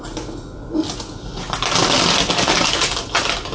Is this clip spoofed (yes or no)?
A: no